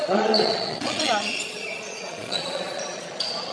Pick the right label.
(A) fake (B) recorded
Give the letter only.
A